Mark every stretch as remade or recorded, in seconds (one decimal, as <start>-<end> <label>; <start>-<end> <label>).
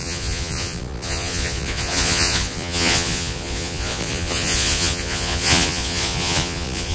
0.0-6.9 remade